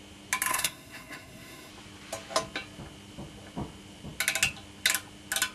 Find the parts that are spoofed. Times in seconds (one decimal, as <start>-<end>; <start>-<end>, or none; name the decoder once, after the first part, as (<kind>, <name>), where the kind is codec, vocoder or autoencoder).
0.5-1.7 (codec, SNAC)